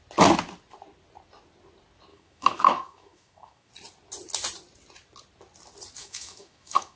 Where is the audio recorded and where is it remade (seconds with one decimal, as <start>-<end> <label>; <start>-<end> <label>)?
0.0-2.1 recorded; 2.1-3.7 remade; 3.7-6.0 recorded; 6.0-7.0 remade